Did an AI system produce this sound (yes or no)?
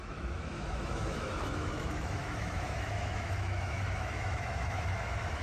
yes